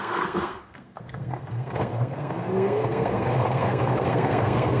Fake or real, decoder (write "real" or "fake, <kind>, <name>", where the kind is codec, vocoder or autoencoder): fake, codec, SNAC